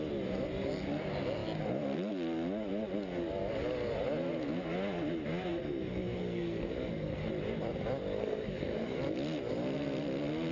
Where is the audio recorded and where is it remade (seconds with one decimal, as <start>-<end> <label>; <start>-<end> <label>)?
0.0-5.5 recorded; 5.5-7.3 remade; 7.3-8.2 recorded; 8.2-9.0 remade; 9.0-10.5 recorded

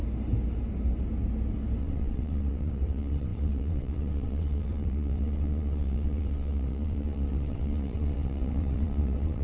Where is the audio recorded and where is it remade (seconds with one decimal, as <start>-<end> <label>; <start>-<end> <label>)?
0.0-1.8 recorded; 1.8-9.4 remade

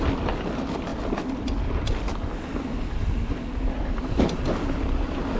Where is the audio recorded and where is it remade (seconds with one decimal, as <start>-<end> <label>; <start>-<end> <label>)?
0.0-5.4 recorded

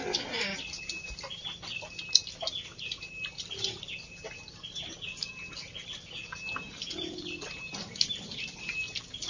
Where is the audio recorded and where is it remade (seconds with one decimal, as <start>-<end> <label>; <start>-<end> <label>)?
0.0-9.3 recorded

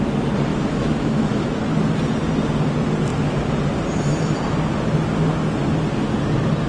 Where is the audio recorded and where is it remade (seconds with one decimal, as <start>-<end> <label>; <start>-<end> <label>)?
0.0-0.5 recorded; 0.5-1.6 remade; 1.6-6.7 recorded